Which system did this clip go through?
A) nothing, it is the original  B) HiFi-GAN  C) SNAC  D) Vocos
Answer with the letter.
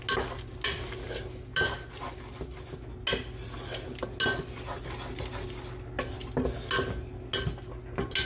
A